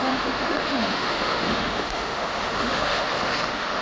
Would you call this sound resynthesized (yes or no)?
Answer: yes